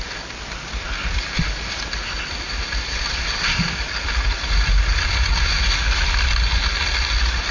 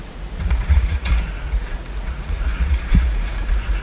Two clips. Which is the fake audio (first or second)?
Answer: second